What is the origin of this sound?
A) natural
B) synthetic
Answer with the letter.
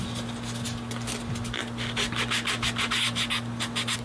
A